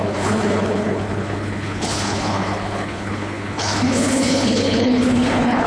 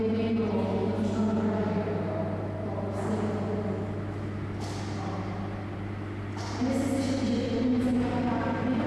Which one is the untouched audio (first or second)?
second